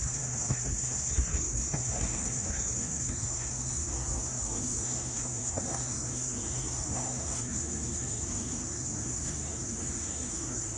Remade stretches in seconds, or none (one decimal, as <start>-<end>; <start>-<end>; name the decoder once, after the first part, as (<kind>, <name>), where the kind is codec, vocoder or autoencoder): 0.0-10.8 (codec, SNAC)